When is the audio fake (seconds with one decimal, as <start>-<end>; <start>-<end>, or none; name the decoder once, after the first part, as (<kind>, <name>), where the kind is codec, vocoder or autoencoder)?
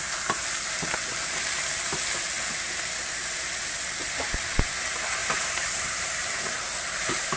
5.2-6.3 (vocoder, BigVGAN v2)